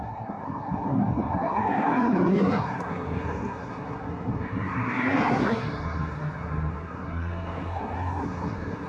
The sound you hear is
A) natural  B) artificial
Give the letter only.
B